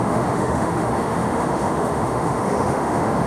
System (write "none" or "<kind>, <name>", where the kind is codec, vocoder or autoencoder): autoencoder, DAC-VAE